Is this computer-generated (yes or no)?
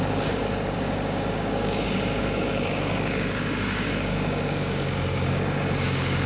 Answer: yes